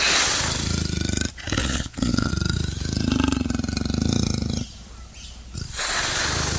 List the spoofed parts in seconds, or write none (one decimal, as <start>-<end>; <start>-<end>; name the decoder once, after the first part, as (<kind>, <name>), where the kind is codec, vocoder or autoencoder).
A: 1.6-2.3 (vocoder, Vocos)